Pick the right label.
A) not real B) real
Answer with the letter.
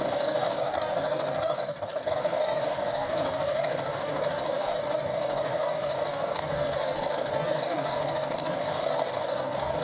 A